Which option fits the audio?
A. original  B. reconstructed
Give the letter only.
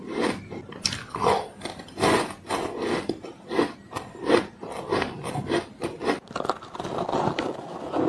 A